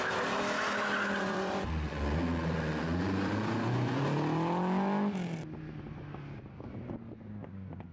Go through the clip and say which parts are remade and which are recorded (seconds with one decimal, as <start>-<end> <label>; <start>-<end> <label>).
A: 0.0-1.2 recorded; 1.2-4.0 remade; 4.0-7.9 recorded